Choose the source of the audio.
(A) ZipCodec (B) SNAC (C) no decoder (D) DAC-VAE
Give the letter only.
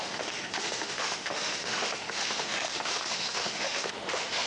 D